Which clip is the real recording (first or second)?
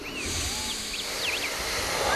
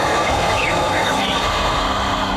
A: first